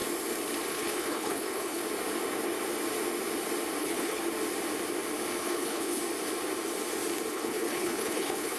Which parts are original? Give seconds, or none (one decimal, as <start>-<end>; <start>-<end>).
0.0-0.7; 1.8-3.8; 4.2-5.4; 6.0-7.3